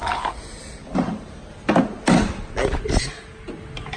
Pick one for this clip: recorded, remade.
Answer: recorded